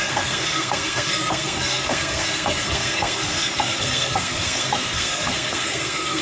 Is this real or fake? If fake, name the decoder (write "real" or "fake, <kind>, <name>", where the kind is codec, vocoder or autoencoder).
fake, codec, SNAC